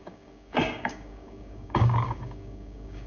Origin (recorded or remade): remade